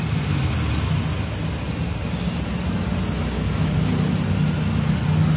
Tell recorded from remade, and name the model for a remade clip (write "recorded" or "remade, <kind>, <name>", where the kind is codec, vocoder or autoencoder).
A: recorded